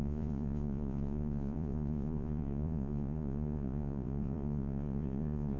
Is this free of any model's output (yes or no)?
no